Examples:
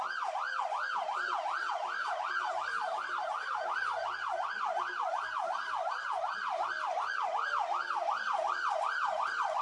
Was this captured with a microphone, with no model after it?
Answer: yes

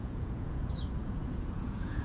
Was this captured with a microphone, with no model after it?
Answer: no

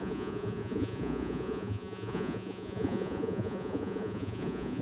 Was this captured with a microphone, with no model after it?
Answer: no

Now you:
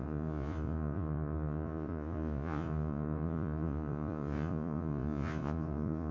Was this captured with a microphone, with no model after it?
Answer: no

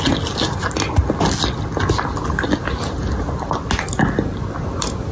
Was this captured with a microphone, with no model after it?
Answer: yes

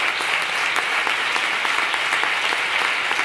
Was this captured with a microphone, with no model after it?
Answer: yes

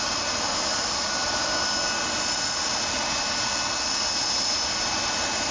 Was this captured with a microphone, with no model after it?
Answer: yes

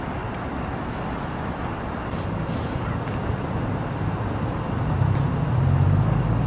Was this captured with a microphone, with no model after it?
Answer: yes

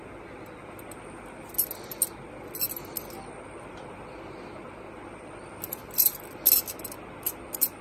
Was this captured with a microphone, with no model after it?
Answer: yes